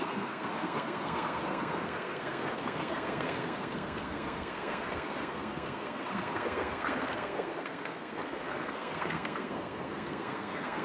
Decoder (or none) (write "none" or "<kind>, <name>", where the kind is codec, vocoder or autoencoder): codec, SNAC